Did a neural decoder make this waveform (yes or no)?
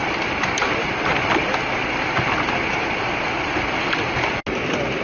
no